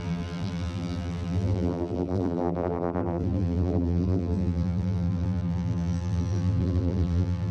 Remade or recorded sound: remade